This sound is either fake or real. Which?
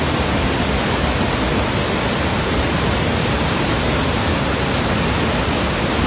real